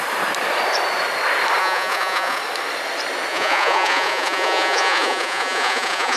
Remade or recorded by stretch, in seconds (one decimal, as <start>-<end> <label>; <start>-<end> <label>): 0.0-1.6 recorded; 1.6-2.4 remade; 2.4-3.3 recorded; 3.3-6.2 remade